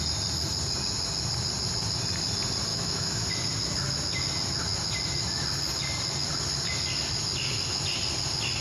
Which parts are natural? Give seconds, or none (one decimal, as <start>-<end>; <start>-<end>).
0.0-2.7; 3.3-8.6